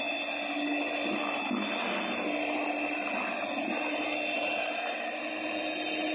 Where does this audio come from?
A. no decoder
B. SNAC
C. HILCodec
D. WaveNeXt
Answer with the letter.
A